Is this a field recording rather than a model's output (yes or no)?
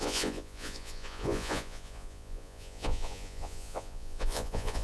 no